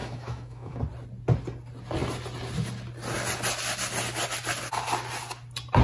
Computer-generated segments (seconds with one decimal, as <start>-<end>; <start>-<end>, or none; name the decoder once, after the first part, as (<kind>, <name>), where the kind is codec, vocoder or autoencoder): 0.0-0.8 (autoencoder, DAC-VAE)